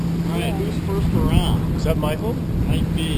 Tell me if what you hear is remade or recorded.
recorded